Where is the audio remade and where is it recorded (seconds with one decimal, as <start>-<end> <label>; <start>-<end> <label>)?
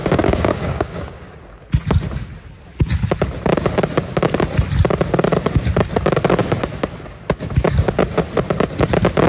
0.0-1.4 remade; 1.4-9.3 recorded